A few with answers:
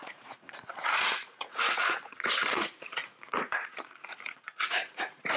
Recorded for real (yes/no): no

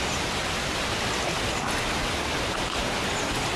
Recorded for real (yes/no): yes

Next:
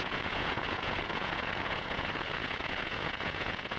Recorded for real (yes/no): no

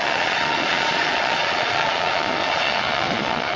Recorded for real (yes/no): no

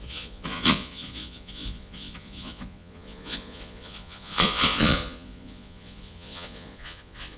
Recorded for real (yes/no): no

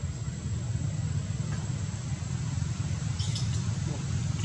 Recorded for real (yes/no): yes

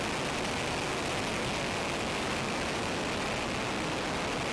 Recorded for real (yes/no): yes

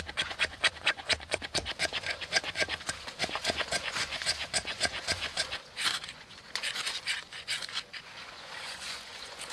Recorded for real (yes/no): no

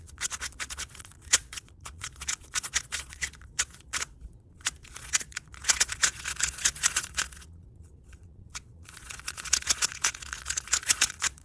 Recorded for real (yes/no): no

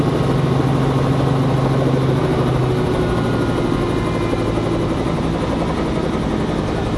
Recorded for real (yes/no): yes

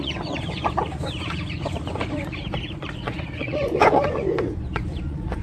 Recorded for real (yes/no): no